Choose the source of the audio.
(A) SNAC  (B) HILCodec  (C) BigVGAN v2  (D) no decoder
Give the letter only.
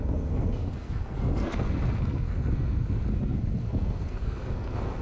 A